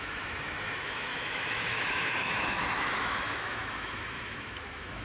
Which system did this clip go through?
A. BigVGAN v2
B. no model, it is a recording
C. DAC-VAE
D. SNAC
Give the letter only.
C